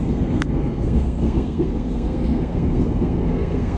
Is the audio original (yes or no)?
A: no